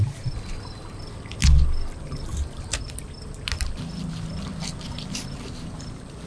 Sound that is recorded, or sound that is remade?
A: recorded